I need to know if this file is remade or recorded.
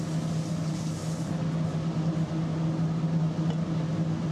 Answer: recorded